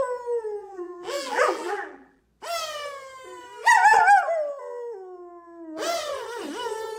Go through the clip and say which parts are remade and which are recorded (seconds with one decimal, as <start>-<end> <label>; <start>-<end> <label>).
0.0-0.6 recorded; 0.6-2.2 remade; 2.2-7.0 recorded